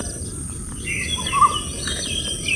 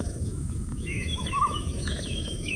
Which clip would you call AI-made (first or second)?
second